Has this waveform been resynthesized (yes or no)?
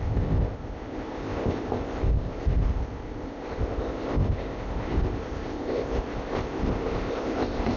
yes